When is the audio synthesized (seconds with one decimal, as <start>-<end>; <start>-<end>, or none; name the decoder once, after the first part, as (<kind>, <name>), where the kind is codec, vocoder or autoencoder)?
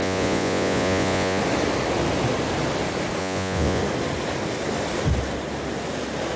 0.0-1.4 (vocoder, Vocos); 3.2-3.8